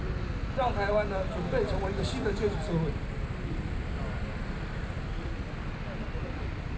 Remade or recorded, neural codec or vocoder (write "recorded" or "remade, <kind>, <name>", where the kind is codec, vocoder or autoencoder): recorded